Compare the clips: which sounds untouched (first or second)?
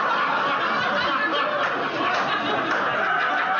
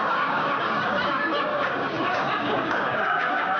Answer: first